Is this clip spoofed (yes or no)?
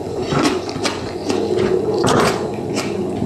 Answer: yes